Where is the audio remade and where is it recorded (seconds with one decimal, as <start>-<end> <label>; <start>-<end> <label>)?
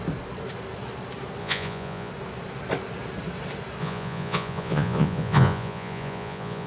0.0-1.4 recorded; 1.4-2.1 remade; 2.1-3.8 recorded; 3.8-6.7 remade